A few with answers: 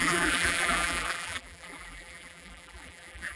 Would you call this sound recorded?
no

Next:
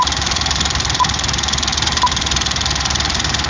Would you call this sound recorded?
no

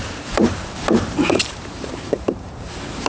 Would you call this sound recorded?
no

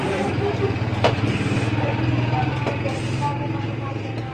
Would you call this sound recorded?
no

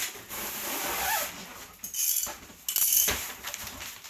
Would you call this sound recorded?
yes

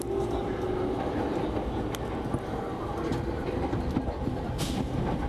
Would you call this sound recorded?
yes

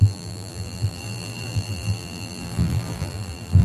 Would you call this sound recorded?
no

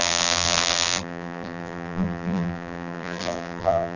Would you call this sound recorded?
no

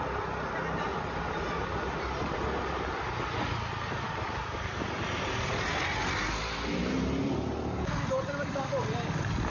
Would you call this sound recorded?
yes